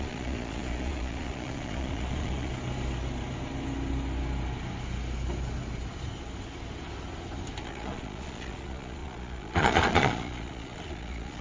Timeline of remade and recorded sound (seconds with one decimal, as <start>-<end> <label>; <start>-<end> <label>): 0.0-2.5 remade; 2.5-7.6 recorded; 7.6-11.4 remade